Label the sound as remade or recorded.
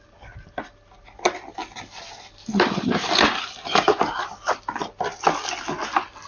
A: recorded